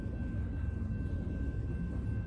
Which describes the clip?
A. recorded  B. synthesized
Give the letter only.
A